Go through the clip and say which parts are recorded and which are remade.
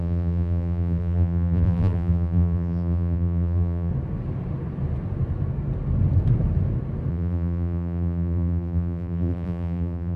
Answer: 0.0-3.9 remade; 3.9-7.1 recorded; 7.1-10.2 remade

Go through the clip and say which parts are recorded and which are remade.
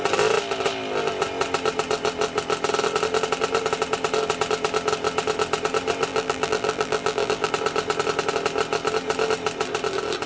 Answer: 0.0-6.1 recorded; 6.1-7.5 remade; 7.5-10.3 recorded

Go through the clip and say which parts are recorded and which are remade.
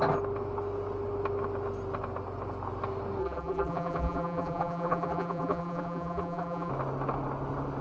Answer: 0.0-3.2 recorded; 3.2-6.7 remade; 6.7-7.8 recorded